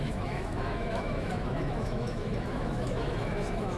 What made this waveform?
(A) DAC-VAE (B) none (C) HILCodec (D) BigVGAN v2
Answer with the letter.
A